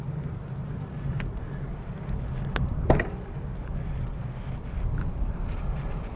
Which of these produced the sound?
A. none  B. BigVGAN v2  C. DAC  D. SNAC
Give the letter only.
A